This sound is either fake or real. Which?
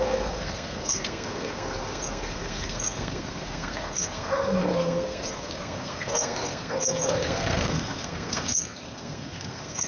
fake